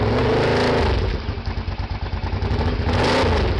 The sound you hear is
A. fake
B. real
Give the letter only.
B